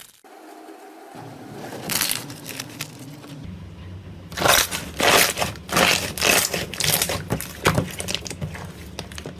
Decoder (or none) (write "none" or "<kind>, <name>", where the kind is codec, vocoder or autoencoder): none